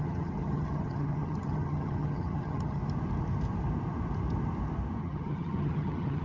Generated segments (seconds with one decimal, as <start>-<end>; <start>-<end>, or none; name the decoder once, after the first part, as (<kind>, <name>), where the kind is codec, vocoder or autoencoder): 0.0-2.8 (vocoder, HiFi-GAN); 5.0-6.2